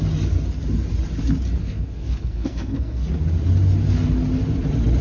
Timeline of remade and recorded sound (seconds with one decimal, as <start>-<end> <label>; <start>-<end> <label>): 0.0-1.6 recorded; 1.6-3.1 remade; 3.1-5.0 recorded